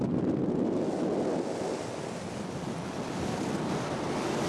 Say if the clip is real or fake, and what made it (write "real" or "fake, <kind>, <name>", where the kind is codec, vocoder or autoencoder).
real